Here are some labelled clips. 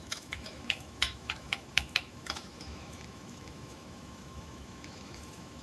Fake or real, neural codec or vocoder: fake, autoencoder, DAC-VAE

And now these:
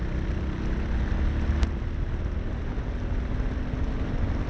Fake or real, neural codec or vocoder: real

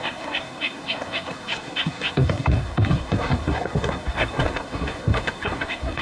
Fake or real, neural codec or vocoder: fake, codec, SNAC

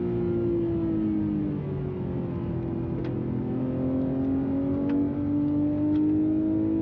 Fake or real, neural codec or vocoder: real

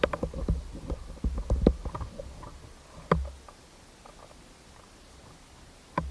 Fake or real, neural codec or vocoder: real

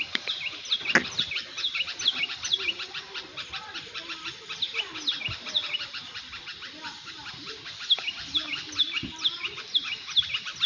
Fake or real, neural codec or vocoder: real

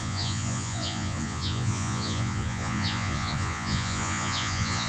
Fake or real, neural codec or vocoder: fake, vocoder, Vocos